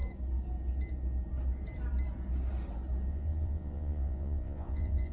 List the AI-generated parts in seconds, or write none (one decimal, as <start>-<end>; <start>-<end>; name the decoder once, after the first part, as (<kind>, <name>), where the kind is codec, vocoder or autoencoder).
3.1-5.1 (vocoder, Vocos)